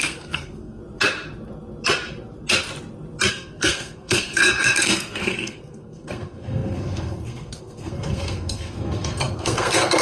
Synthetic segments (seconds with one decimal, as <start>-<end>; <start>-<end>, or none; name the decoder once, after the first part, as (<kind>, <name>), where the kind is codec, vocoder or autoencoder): 0.0-0.8 (codec, SNAC); 3.3-10.0